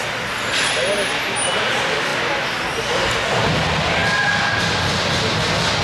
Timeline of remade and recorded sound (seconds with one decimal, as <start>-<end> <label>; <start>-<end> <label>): 0.0-5.8 recorded